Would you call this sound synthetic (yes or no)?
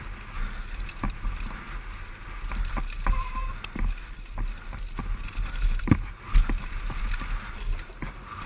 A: no